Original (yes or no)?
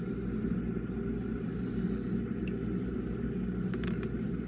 yes